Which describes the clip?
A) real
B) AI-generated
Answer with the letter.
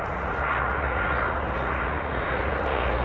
B